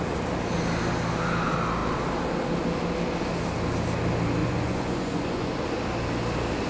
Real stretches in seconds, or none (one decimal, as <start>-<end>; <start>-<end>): 0.0-4.4; 5.5-6.7